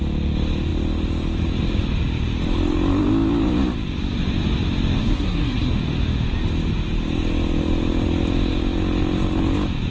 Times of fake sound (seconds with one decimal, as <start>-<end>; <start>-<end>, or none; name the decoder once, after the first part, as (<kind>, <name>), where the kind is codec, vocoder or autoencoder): 5.0-5.7 (codec, SNAC)